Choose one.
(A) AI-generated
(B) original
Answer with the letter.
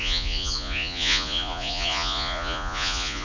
A